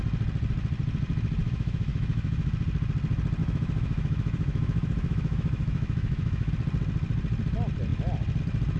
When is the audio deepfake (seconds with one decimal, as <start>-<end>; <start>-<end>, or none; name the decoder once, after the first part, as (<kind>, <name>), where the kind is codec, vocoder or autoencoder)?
1.4-2.5 (autoencoder, DAC-VAE); 3.4-6.5